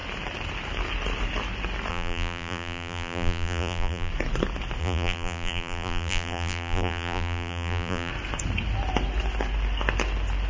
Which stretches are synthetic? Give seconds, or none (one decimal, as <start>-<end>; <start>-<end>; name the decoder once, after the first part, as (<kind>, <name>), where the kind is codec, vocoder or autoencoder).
1.9-4.1 (vocoder, BigVGAN v2); 4.8-8.1